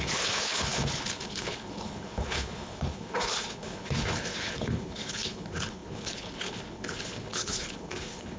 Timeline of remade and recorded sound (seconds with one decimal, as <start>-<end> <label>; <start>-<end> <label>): 0.0-8.4 remade